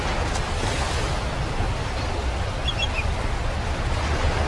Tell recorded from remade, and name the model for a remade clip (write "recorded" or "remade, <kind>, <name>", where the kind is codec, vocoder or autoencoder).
recorded